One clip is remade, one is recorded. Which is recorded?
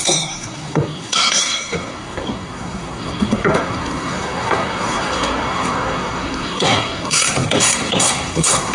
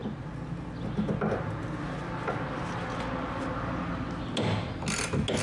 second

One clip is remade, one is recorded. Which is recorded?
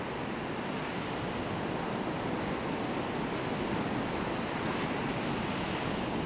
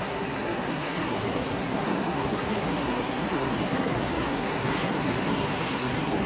first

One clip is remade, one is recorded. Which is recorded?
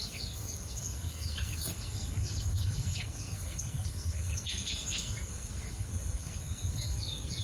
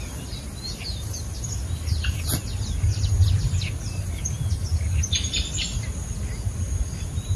second